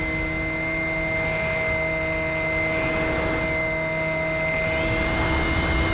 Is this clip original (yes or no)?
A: yes